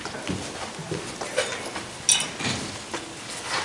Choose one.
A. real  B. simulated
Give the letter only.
A